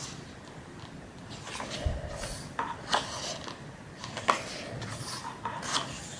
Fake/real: real